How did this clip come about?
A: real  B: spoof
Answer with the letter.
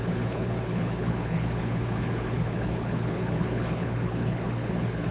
B